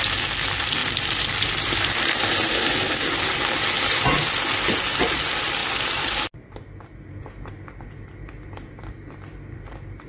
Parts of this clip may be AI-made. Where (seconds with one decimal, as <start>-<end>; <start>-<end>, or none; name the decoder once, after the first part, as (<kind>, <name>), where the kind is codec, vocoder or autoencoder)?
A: 0.8-1.5 (vocoder, BigVGAN v2)